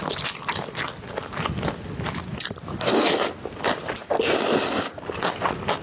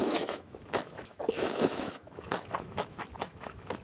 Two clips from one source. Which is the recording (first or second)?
first